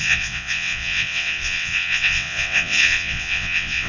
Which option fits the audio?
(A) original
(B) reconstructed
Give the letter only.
B